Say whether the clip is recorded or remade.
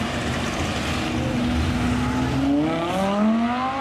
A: recorded